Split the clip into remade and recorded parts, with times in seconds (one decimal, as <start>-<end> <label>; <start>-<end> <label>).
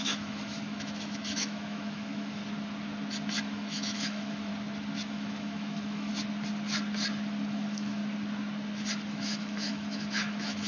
0.0-2.4 remade; 2.4-3.4 recorded; 3.4-4.5 remade; 4.5-5.1 recorded; 5.1-6.1 remade; 6.1-7.5 recorded; 7.5-8.0 remade; 8.0-9.1 recorded; 9.1-10.7 remade